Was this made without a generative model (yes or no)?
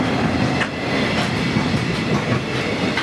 yes